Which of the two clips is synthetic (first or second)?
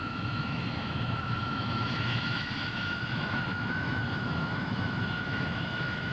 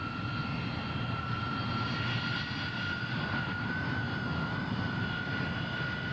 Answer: first